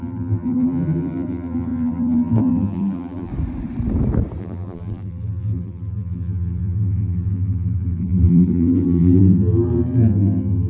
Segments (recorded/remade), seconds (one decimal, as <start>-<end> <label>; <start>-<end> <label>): 0.0-3.3 remade; 3.3-4.4 recorded; 4.4-10.7 remade